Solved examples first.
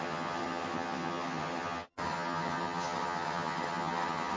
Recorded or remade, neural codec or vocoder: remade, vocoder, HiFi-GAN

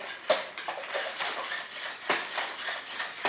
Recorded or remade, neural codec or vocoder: recorded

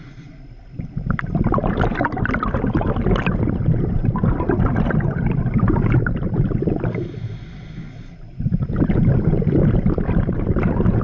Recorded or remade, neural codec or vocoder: recorded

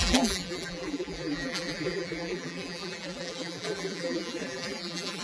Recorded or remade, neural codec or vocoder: remade, vocoder, BigVGAN v2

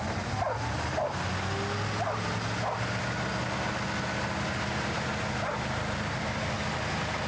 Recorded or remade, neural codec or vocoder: recorded